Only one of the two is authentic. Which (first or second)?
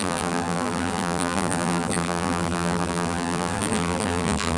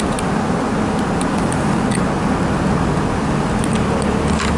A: second